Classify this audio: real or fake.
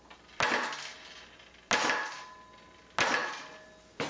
real